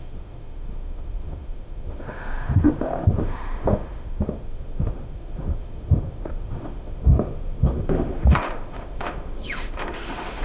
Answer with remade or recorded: remade